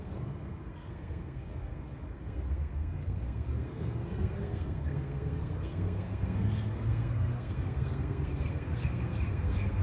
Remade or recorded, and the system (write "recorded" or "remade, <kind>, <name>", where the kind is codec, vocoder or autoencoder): remade, codec, SNAC